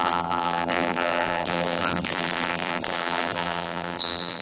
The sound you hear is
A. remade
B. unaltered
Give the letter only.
A